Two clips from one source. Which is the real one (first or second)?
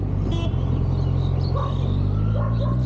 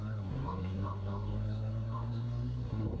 first